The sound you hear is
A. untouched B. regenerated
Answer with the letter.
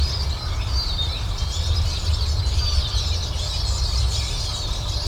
A